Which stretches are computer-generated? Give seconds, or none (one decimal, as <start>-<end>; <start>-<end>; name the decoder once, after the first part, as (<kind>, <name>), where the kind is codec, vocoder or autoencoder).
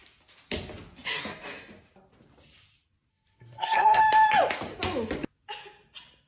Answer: 3.1-4.0 (codec, SNAC)